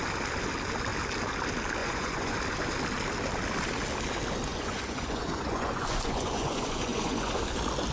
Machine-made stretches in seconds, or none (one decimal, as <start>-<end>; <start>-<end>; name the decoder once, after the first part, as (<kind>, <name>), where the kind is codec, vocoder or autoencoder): 1.8-2.4 (vocoder, Vocos); 4.5-7.4